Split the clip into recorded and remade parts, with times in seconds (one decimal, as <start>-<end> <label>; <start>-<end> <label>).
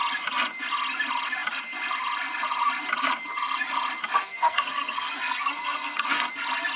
0.0-4.2 recorded; 4.2-6.3 remade; 6.3-6.8 recorded